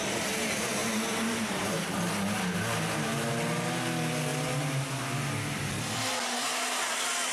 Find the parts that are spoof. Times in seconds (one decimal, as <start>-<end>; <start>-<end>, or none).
0.8-1.9; 4.3-4.9